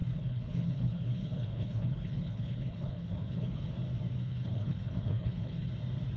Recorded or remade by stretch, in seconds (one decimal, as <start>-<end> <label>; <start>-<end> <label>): 0.0-3.7 remade; 3.7-4.2 recorded; 4.2-5.7 remade; 5.7-6.2 recorded